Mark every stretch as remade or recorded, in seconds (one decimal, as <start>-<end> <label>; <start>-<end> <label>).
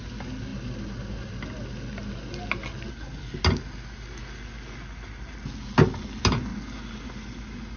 0.0-7.8 recorded